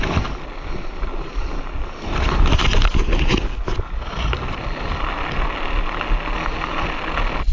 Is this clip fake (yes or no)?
no